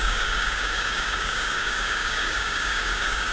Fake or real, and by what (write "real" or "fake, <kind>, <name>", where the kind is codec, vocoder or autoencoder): fake, codec, DAC